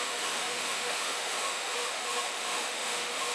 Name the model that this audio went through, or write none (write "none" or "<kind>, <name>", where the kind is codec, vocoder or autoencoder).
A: autoencoder, DAC-VAE